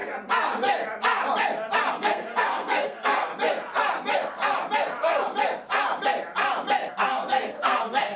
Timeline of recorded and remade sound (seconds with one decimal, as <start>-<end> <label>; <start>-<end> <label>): 0.0-1.9 recorded; 1.9-3.3 remade; 3.3-6.9 recorded; 6.9-8.2 remade